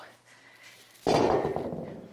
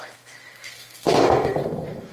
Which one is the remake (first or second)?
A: second